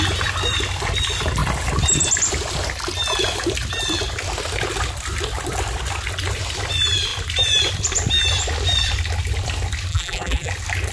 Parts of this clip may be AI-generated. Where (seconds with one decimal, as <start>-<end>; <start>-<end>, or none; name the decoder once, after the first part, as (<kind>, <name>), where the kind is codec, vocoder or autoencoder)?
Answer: 9.9-10.5 (vocoder, BigVGAN v2)